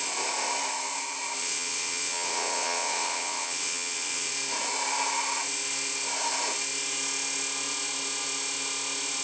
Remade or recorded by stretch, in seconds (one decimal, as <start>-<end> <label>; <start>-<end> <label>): 0.0-1.4 recorded; 1.4-4.3 remade; 4.3-9.2 recorded